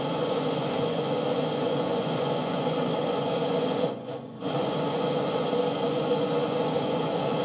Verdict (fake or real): fake